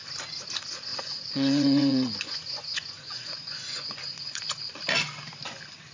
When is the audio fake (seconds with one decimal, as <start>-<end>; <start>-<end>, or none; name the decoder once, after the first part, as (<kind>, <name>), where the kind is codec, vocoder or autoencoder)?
0.9-4.4 (vocoder, Vocos)